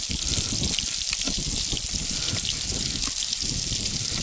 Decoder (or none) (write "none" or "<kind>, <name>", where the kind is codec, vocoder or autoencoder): none